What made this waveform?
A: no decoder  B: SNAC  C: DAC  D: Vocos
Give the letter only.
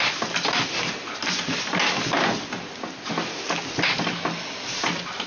A